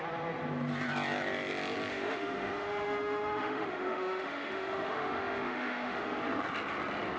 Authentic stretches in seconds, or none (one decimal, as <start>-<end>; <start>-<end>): 0.0-1.9; 6.2-7.2